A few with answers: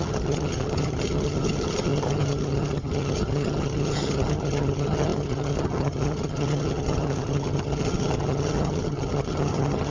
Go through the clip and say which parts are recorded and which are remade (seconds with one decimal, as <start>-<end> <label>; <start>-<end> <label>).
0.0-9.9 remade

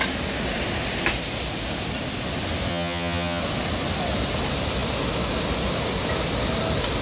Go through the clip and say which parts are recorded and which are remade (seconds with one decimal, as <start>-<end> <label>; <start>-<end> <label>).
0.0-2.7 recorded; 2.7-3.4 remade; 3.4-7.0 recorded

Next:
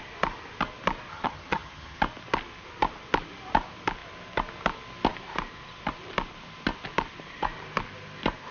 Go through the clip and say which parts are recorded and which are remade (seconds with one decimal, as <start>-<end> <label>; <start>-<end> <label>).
0.0-1.1 recorded; 1.1-2.0 remade; 2.0-8.5 recorded

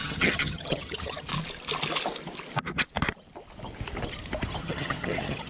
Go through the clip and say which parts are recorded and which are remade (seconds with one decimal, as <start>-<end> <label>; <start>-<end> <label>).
0.0-1.3 remade; 1.3-4.6 recorded; 4.6-5.5 remade

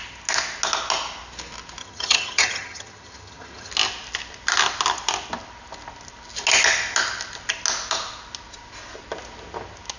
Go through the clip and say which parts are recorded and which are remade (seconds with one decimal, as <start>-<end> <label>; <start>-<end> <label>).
0.0-1.8 recorded; 1.8-3.7 remade; 3.7-10.0 recorded

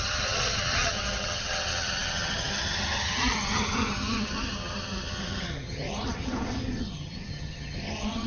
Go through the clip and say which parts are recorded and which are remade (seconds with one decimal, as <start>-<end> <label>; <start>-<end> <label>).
0.0-8.3 remade

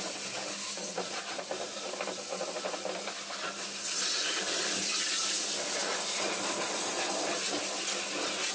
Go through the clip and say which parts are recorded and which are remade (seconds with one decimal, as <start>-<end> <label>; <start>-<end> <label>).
0.0-8.5 recorded